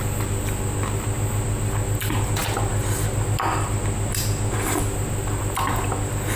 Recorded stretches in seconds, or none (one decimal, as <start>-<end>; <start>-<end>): 0.0-6.4